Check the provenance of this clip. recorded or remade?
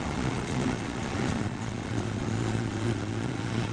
remade